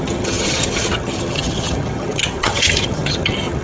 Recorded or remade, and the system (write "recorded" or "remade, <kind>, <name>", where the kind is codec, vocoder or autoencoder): remade, vocoder, HiFi-GAN